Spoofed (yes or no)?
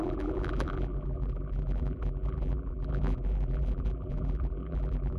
yes